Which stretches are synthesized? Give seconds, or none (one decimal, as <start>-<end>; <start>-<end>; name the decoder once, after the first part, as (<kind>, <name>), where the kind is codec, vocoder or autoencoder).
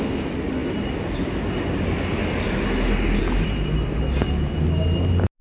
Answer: none